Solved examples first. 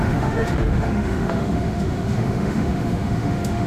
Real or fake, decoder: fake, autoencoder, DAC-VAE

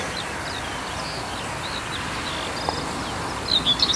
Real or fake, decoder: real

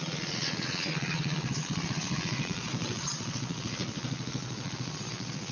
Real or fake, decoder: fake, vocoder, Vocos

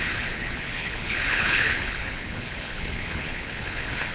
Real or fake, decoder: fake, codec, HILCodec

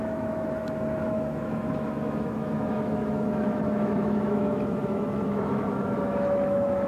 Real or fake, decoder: fake, autoencoder, DAC-VAE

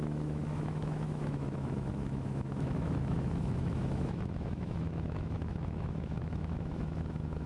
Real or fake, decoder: fake, autoencoder, DAC-VAE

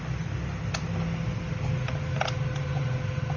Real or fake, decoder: real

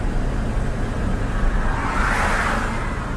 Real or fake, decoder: real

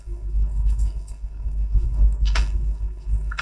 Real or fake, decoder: fake, codec, SNAC